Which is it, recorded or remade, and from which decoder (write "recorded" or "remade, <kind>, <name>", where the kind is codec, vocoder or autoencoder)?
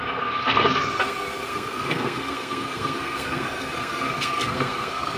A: remade, codec, SNAC